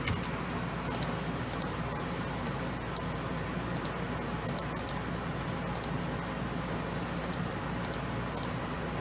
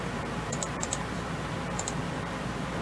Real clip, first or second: first